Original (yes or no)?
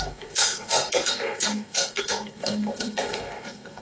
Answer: no